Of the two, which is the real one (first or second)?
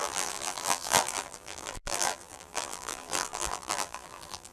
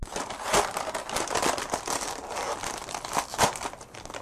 second